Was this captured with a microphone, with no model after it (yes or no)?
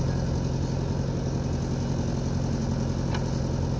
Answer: yes